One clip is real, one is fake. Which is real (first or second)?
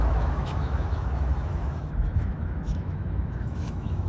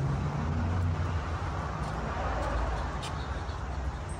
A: second